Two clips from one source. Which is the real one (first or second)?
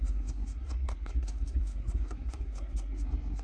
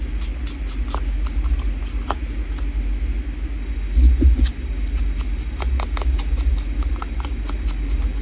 second